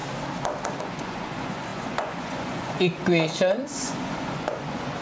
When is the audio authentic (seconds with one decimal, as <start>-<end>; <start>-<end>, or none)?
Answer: 0.0-0.8

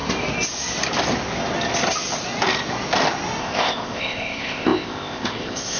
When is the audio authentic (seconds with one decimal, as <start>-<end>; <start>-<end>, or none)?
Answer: 0.0-3.4